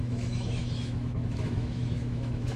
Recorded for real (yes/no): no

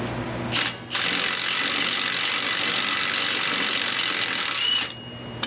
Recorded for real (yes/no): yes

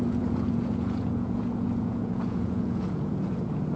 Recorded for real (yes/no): no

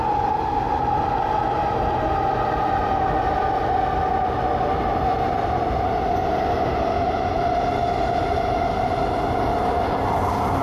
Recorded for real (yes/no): yes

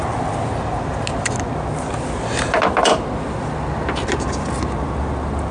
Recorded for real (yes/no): yes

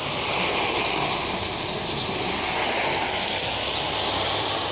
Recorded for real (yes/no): yes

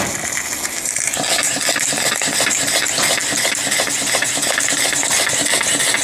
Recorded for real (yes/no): yes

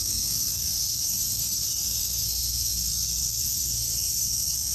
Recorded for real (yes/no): no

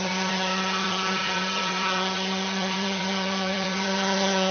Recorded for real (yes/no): no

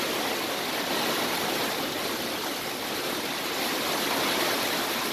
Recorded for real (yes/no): yes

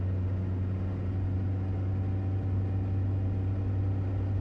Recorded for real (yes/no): yes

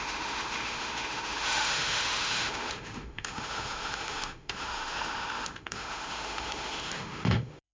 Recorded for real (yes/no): no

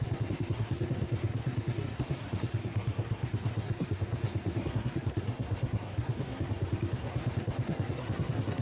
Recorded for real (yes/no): no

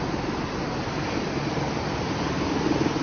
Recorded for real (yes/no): yes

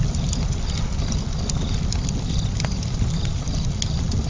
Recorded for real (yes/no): yes